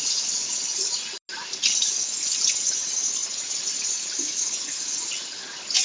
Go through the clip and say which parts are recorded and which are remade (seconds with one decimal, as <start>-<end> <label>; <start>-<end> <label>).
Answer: 0.0-5.8 recorded